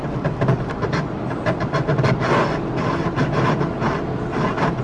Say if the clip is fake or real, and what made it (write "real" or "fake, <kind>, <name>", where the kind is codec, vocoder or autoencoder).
real